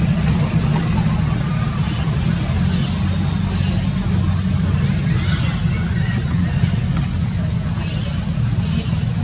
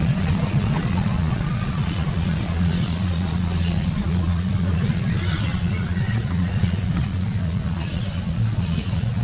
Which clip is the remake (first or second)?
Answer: second